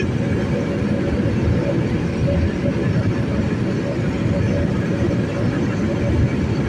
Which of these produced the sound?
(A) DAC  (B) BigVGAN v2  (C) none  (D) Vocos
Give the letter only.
C